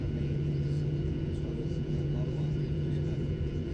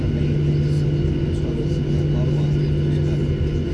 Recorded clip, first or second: second